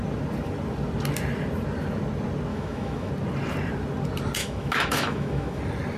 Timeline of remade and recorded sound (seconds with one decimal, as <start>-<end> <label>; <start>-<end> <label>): 0.0-2.5 recorded; 2.5-3.1 remade; 3.1-4.4 recorded; 4.4-5.6 remade; 5.6-6.0 recorded